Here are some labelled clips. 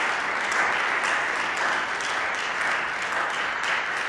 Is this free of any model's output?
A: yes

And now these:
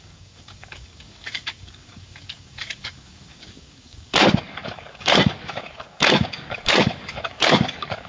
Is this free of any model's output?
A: no